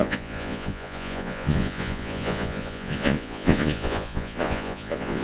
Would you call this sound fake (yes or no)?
yes